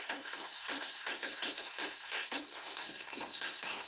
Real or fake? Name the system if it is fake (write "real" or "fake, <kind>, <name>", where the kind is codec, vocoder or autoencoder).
fake, codec, SNAC